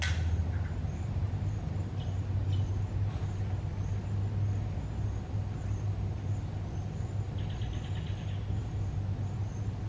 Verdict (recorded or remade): recorded